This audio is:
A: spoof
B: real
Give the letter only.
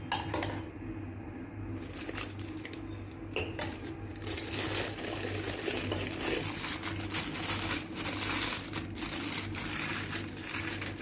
B